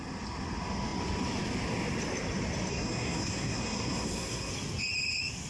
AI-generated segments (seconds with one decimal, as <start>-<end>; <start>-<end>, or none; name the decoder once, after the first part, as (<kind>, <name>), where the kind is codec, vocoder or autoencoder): 2.7-4.5 (codec, SNAC)